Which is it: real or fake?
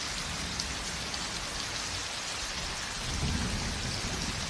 real